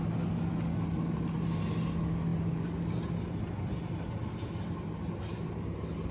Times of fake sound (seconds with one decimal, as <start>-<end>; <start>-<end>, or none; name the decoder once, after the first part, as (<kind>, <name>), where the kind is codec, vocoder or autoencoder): none